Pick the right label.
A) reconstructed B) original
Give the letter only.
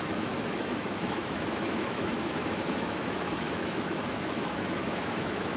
A